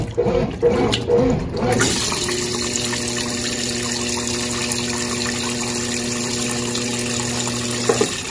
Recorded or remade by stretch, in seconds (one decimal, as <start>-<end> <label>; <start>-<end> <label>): 0.0-8.3 recorded